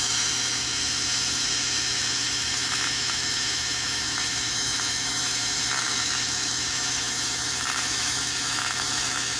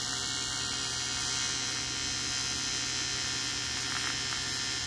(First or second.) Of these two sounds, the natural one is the second